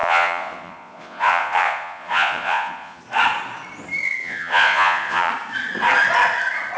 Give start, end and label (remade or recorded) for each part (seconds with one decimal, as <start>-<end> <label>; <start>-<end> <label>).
0.0-3.0 remade; 3.0-4.2 recorded; 4.2-5.3 remade; 5.3-6.8 recorded